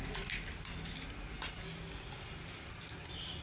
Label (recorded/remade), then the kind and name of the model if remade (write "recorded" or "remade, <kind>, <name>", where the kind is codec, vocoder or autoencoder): recorded